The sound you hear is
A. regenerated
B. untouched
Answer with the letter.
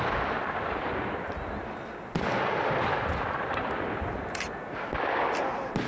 B